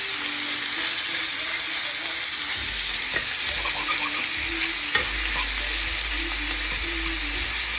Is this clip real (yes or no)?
yes